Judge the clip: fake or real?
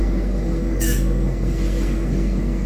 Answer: fake